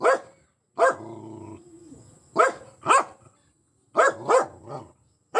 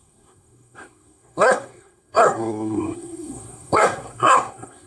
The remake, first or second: second